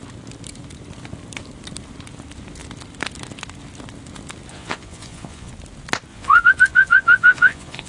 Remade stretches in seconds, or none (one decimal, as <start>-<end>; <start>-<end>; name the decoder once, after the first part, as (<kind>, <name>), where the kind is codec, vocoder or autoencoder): 4.5-5.5 (vocoder, Vocos); 6.1-7.9

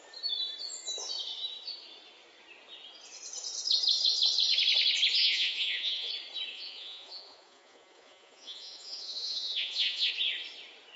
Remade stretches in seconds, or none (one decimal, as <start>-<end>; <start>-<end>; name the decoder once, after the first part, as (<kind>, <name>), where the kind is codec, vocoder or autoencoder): 5.2-6.1 (vocoder, Vocos); 6.5-10.1

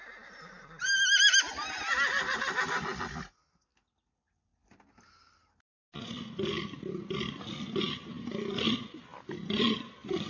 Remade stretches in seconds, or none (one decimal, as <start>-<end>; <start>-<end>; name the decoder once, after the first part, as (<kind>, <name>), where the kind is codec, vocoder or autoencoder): none

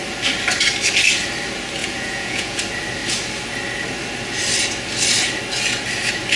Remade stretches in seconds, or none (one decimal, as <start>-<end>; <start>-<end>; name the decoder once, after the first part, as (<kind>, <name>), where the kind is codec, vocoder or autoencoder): 1.8-2.6 (vocoder, Vocos)

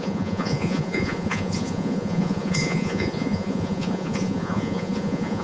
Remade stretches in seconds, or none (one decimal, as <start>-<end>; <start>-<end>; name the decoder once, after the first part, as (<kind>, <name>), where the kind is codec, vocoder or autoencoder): 0.0-5.4 (vocoder, Vocos)

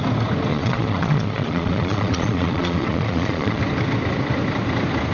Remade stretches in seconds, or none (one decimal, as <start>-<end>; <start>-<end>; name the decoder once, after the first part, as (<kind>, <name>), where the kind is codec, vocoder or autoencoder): 0.5-3.6 (vocoder, Vocos)

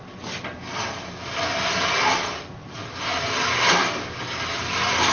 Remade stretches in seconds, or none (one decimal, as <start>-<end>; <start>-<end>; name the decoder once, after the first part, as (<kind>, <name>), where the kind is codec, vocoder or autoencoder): none